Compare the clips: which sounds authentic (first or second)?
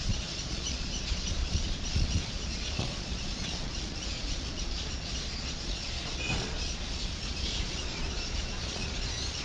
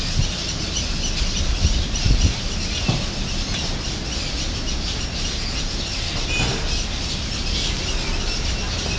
second